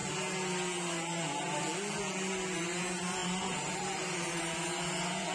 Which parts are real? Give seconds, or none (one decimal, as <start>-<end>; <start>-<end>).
0.0-3.2; 4.4-5.3